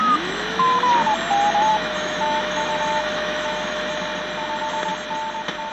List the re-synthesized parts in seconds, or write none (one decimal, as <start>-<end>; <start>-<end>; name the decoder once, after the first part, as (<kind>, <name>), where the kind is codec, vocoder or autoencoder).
0.0-0.9 (autoencoder, DAC-VAE); 1.7-3.9